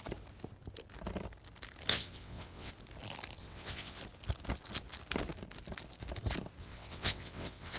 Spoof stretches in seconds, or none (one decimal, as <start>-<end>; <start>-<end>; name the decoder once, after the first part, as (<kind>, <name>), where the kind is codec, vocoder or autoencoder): 1.9-2.7 (vocoder, WaveNeXt); 3.4-4.0; 6.6-7.8